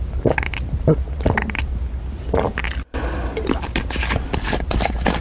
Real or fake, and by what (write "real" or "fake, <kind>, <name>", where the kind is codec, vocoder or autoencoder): real